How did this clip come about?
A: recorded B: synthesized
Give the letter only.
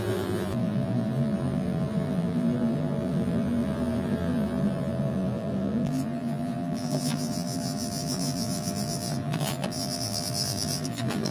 B